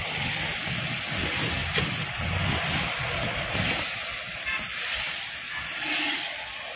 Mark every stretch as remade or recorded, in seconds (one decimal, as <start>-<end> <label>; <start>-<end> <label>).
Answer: 0.0-6.8 recorded

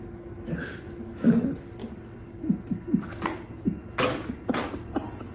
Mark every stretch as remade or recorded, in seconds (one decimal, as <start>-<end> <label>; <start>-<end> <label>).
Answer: 0.0-5.3 recorded

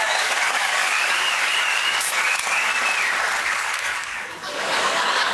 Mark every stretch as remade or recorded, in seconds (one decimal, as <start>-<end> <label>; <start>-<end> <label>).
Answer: 0.0-2.7 remade; 2.7-3.4 recorded; 3.4-5.3 remade